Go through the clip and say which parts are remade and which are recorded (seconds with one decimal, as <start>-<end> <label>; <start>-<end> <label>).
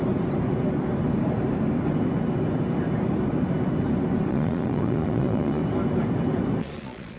0.0-4.3 recorded; 4.3-5.6 remade; 5.6-6.6 recorded; 6.6-7.2 remade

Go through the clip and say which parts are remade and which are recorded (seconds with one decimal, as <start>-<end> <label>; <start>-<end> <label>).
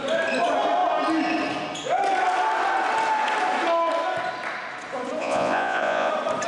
0.0-5.2 recorded; 5.2-6.1 remade; 6.1-6.5 recorded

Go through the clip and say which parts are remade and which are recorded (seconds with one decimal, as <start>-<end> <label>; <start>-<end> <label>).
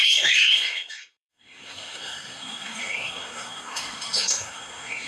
0.0-5.1 remade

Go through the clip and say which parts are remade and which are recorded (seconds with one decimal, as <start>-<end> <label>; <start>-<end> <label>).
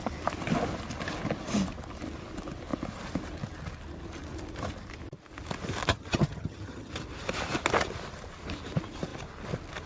0.0-5.9 recorded; 5.9-6.9 remade; 6.9-9.9 recorded